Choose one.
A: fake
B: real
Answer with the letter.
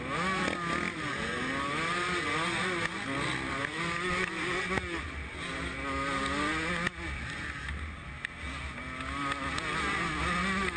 B